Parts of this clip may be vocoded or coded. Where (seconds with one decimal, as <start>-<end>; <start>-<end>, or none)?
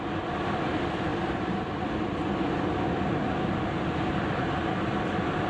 none